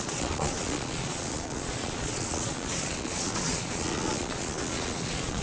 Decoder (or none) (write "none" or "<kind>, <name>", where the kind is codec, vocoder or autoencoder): vocoder, Vocos